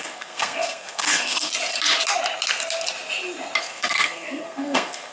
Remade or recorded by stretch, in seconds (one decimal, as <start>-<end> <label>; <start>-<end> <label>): 0.0-1.5 remade; 1.5-3.6 recorded; 3.6-5.1 remade